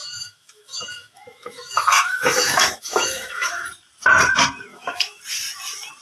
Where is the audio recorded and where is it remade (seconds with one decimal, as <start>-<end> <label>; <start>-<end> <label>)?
0.0-3.6 remade; 3.6-4.7 recorded; 4.7-5.2 remade; 5.2-6.0 recorded